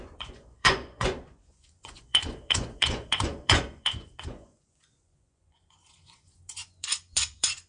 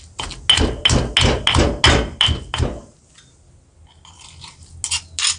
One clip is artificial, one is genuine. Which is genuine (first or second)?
second